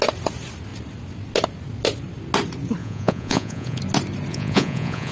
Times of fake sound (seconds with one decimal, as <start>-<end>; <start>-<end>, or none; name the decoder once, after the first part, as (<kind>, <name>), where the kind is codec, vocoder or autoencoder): 2.8-3.8 (vocoder, Vocos); 4.3-5.1